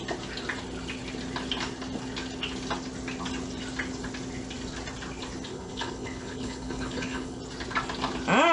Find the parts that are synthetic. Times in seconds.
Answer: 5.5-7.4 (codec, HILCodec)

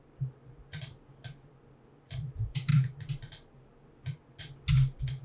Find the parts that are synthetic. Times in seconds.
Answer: none

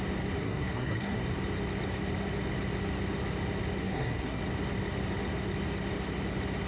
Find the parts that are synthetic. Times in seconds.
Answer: 0.4-1.2 (codec, SNAC); 3.8-4.4

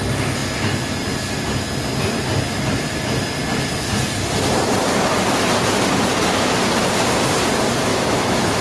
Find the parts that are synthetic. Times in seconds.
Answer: 7.9-8.6 (autoencoder, DAC-VAE)

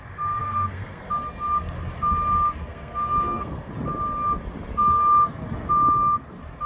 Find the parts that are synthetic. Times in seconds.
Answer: 0.4-1.1 (codec, SNAC); 2.6-3.7

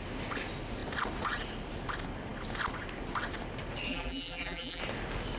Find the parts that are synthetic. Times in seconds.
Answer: 3.9-4.8 (vocoder, BigVGAN v2)

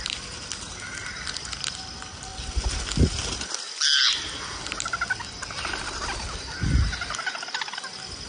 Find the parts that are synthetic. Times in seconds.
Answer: none

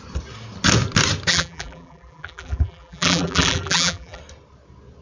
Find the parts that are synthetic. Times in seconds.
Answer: 1.3-4.2 (vocoder, BigVGAN v2)